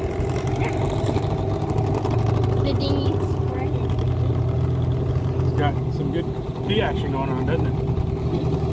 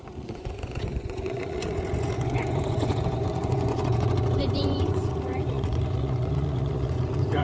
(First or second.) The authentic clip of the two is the first